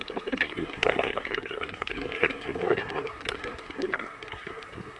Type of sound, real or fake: fake